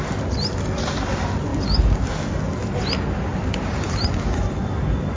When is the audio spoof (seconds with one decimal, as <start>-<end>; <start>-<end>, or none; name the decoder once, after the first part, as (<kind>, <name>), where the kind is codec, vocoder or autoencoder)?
3.3-4.1 (vocoder, BigVGAN v2)